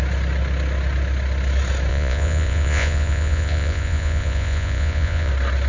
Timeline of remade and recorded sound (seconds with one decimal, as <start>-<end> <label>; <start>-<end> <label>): 0.0-1.9 recorded; 1.9-5.3 remade; 5.3-5.7 recorded